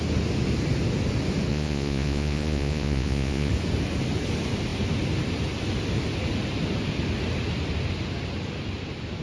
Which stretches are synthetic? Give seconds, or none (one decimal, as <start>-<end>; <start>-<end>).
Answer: 1.5-3.5